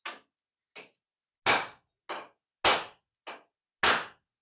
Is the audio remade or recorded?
recorded